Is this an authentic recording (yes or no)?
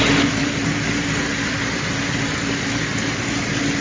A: yes